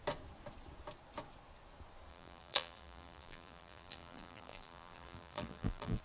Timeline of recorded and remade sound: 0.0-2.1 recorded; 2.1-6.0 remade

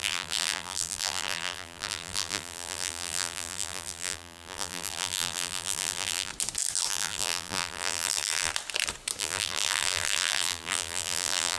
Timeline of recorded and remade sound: 0.0-6.3 remade; 6.3-6.9 recorded; 6.9-8.5 remade; 8.5-9.2 recorded; 9.2-11.6 remade

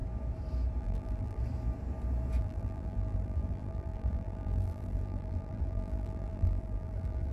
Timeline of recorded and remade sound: 0.0-0.8 recorded; 0.8-1.4 remade; 1.4-2.4 recorded; 2.4-7.3 remade

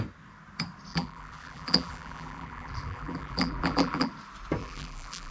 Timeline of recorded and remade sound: 0.0-0.9 recorded; 0.9-4.1 remade; 4.1-4.6 recorded; 4.6-5.3 remade

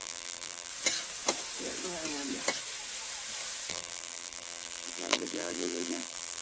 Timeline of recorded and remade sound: 0.0-0.7 remade; 0.7-3.7 recorded; 3.7-6.4 remade

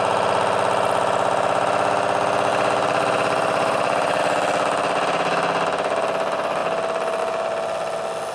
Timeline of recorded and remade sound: 0.0-2.5 recorded; 2.5-4.2 remade; 4.2-8.3 recorded